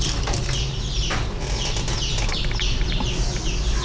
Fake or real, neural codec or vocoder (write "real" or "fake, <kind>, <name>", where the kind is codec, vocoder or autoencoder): real